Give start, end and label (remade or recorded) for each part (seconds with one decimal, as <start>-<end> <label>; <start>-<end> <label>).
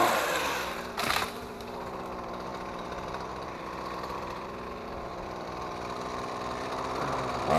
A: 0.0-2.5 recorded; 2.5-6.9 remade; 6.9-7.6 recorded